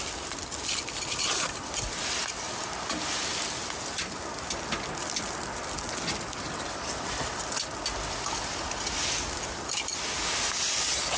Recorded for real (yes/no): yes